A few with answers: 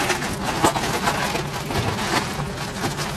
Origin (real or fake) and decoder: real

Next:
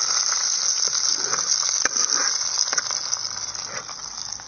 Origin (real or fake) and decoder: real